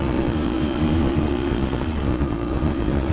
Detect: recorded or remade remade